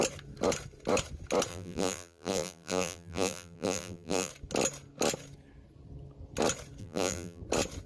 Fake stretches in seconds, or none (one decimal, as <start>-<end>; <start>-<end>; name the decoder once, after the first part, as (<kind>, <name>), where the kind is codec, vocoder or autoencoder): 1.5-4.3 (vocoder, BigVGAN v2); 6.8-7.4